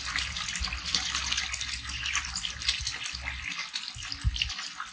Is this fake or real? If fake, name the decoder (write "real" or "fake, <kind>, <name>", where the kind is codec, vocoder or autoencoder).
real